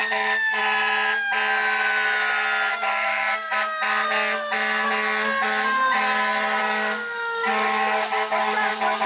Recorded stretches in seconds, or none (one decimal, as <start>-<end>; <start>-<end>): 0.6-2.7; 3.5-6.6; 8.7-9.1